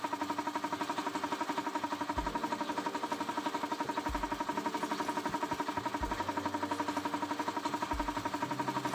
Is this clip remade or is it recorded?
recorded